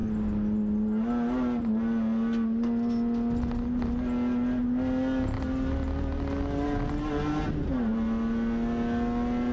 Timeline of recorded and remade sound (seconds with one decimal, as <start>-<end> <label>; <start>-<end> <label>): 0.0-9.5 recorded

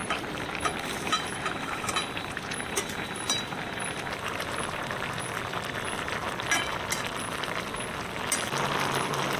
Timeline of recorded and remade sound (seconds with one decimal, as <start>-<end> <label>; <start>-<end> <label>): 0.0-5.2 remade; 5.2-9.4 recorded

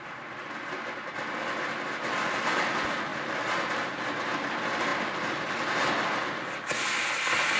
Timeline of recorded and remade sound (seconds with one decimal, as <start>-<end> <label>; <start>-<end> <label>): 0.0-7.6 recorded

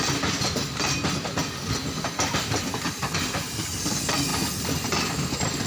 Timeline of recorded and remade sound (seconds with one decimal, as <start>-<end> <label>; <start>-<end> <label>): 0.0-1.4 remade; 1.4-3.6 recorded; 3.6-4.3 remade; 4.3-5.1 recorded; 5.1-5.7 remade

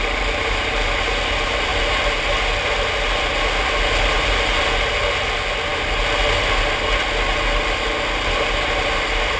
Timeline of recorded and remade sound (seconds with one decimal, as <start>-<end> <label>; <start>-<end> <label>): 0.0-9.4 recorded

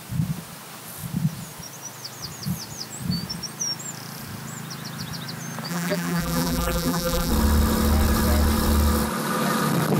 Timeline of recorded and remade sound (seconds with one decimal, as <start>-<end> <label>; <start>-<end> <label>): 0.0-5.7 recorded; 5.7-7.3 remade; 7.3-10.0 recorded

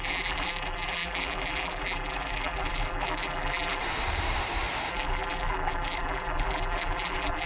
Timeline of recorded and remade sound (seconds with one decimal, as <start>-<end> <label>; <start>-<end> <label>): 0.0-3.8 remade; 3.8-4.9 recorded; 4.9-7.5 remade